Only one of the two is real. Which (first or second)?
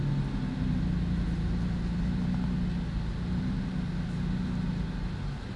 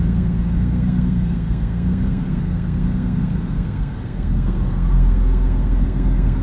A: first